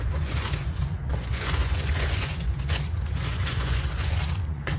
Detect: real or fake fake